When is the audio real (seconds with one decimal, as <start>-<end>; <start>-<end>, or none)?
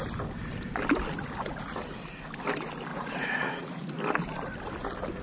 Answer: 0.0-2.9; 3.8-5.2